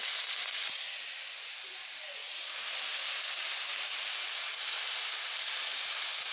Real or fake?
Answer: real